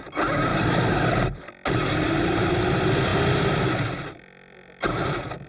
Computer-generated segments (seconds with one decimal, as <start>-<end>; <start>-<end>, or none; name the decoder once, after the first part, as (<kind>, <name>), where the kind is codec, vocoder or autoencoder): none